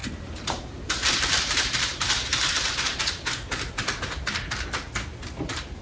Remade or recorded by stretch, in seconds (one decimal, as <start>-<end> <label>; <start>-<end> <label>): 0.0-3.5 remade; 3.5-5.8 recorded